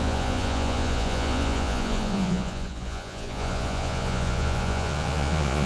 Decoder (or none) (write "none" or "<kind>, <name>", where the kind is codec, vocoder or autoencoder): vocoder, Vocos